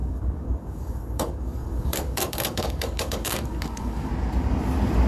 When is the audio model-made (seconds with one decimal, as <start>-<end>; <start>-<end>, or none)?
0.0-4.1